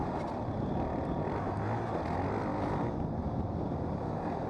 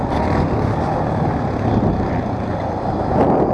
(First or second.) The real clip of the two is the first